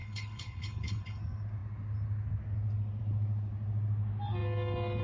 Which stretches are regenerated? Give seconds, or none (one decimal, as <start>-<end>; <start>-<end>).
0.0-1.2